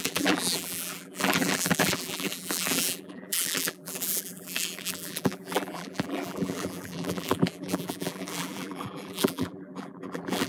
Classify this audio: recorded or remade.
remade